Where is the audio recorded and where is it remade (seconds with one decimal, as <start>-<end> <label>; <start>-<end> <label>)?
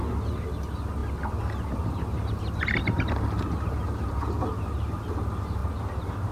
0.0-6.3 recorded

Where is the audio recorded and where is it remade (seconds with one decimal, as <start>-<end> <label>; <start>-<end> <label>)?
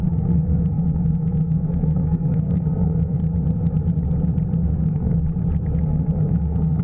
0.0-3.2 remade; 3.2-4.6 recorded; 4.6-5.2 remade; 5.2-5.9 recorded; 5.9-6.8 remade